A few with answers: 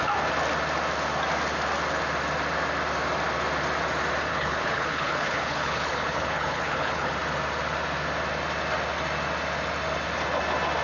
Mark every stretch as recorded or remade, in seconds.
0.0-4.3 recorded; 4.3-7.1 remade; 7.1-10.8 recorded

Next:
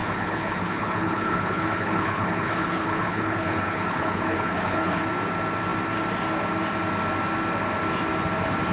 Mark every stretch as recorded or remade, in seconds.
0.0-5.0 remade; 5.0-8.7 recorded

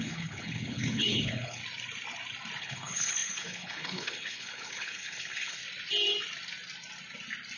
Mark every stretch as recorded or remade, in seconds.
0.0-1.6 remade; 1.6-2.6 recorded; 2.6-5.6 remade; 5.6-7.6 recorded

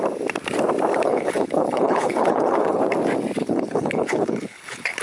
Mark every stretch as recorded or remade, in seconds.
0.0-0.9 recorded; 0.9-2.8 remade; 2.8-3.4 recorded; 3.4-5.0 remade

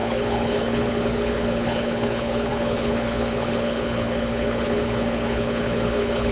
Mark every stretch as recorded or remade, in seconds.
0.0-6.3 remade

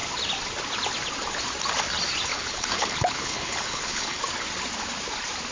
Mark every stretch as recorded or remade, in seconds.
0.0-2.3 recorded; 2.3-4.2 remade; 4.2-5.5 recorded

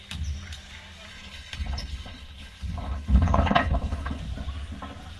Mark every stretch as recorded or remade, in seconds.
0.0-1.1 recorded; 1.1-4.2 remade; 4.2-5.2 recorded